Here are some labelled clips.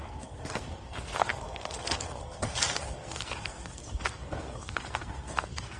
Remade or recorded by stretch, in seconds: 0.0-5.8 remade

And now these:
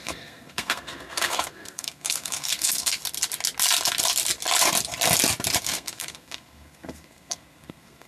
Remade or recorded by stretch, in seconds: 0.0-3.0 remade; 3.0-5.6 recorded; 5.6-8.1 remade

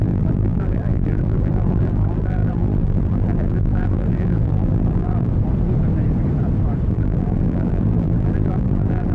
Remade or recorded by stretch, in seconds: 0.0-5.3 remade; 5.3-6.9 recorded; 6.9-9.1 remade

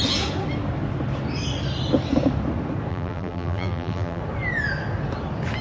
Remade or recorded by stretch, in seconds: 0.0-2.9 recorded; 2.9-4.2 remade; 4.2-5.6 recorded

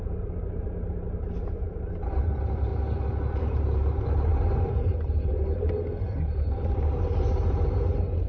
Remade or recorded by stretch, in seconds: 0.0-2.7 remade; 2.7-3.4 recorded; 3.4-8.3 remade

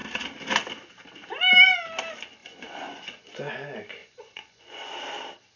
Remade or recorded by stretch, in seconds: 0.0-2.4 recorded; 2.4-3.5 remade; 3.5-4.0 recorded; 4.0-4.9 remade; 4.9-5.6 recorded